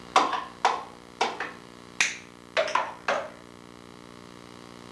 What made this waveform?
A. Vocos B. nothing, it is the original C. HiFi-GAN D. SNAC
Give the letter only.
B